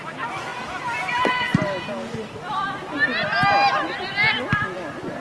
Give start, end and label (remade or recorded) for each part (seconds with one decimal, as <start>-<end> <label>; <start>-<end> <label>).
0.0-5.2 recorded